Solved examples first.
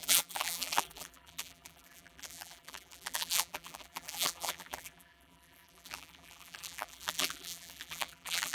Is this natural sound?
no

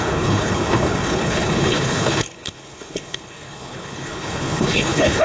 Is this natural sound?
no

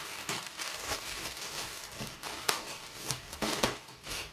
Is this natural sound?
no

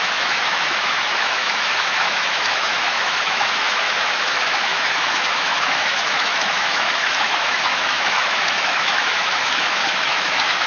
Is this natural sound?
no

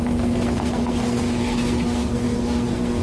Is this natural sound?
no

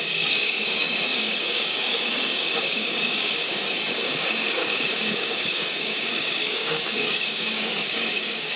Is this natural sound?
no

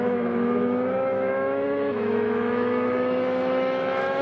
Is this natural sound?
no